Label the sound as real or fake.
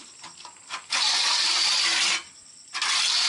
real